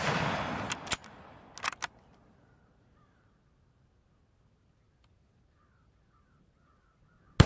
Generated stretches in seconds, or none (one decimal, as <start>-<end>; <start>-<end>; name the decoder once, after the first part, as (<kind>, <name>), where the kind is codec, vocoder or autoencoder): none